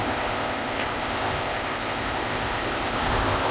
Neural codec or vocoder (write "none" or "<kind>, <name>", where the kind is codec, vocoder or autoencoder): codec, ZipCodec